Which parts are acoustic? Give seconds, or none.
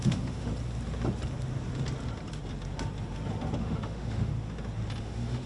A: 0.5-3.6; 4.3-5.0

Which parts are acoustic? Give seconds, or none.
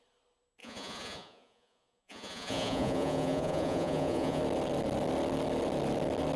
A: 0.0-0.6; 4.4-6.4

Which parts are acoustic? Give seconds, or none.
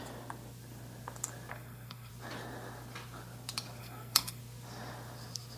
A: 0.0-1.5; 2.1-3.8; 4.4-5.6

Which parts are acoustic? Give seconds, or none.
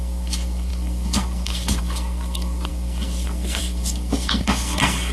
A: none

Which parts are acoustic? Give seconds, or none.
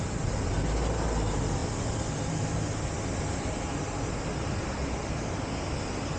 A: 0.0-6.2